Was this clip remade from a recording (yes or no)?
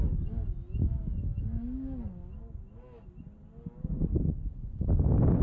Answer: no